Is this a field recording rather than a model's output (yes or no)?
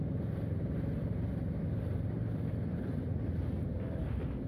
yes